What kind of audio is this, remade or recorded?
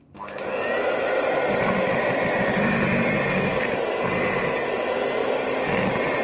recorded